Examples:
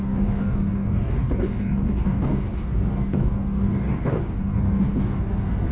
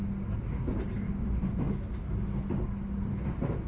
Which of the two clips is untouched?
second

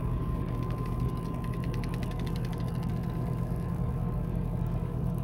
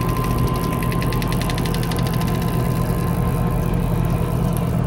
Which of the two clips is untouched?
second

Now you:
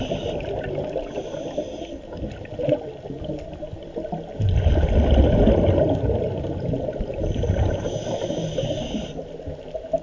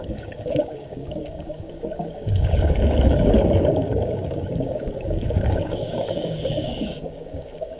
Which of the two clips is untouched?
first